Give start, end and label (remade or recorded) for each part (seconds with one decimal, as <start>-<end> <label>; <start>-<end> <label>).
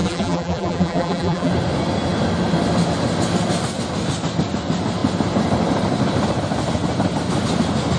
0.0-1.5 remade; 1.5-8.0 recorded